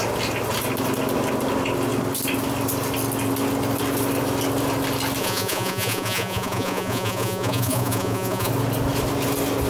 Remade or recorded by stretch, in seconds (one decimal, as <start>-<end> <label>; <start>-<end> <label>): 0.0-5.2 recorded; 5.2-8.5 remade; 8.5-9.7 recorded